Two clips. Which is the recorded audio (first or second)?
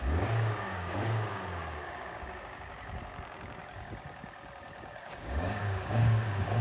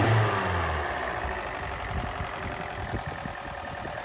second